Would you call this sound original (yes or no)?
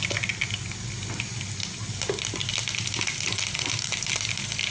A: yes